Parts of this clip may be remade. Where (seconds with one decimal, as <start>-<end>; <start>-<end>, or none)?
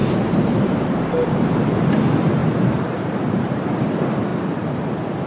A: 0.0-1.7; 2.4-3.7